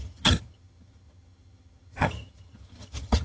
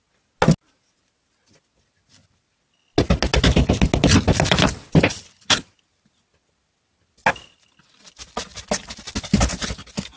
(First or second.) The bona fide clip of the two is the second